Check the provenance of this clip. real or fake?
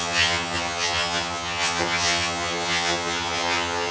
fake